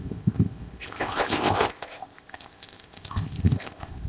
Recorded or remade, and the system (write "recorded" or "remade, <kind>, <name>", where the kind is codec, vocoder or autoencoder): remade, codec, ZipCodec